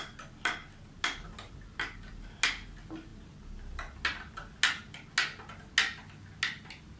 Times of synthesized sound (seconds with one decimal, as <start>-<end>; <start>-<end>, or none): none